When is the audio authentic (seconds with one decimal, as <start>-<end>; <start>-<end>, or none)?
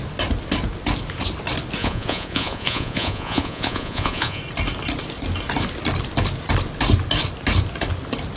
0.0-1.8; 4.4-8.4